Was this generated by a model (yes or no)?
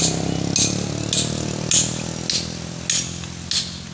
no